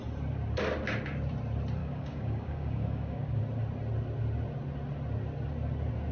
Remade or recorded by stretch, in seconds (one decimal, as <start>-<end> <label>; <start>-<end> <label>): 0.0-1.8 recorded; 1.8-3.4 remade; 3.4-6.1 recorded